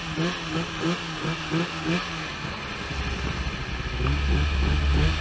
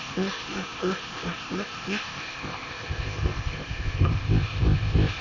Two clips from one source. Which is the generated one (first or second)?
second